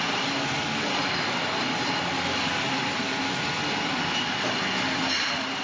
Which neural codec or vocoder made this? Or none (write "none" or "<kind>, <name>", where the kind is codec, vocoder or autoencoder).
none